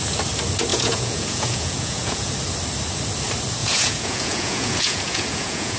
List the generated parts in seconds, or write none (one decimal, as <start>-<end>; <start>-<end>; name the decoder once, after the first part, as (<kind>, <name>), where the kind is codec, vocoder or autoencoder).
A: 0.7-2.3 (vocoder, Vocos); 3.6-5.8